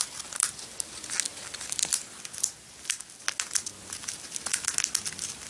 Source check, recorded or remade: recorded